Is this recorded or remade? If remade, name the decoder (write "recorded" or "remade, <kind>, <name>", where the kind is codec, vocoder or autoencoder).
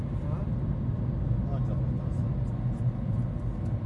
recorded